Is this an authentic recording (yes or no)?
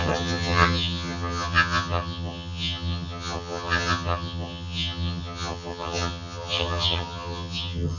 no